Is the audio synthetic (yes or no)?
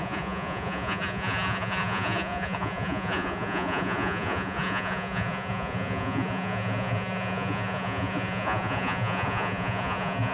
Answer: yes